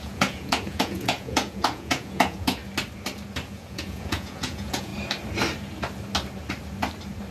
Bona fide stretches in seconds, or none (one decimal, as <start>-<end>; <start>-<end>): 2.6-3.5; 4.9-7.3